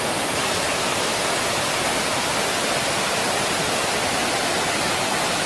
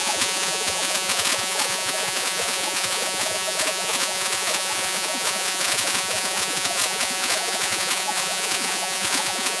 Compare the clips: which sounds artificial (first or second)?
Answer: second